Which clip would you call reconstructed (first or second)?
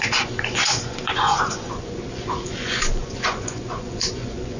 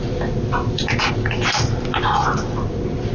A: first